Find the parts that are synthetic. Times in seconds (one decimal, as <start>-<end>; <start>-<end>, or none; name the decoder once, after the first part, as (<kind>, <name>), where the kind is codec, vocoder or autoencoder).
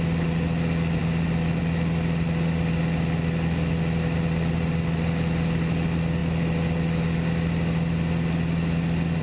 none